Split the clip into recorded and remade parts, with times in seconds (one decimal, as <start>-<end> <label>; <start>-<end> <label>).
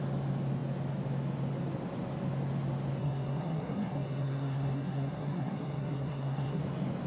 0.0-3.0 recorded; 3.0-6.6 remade; 6.6-7.1 recorded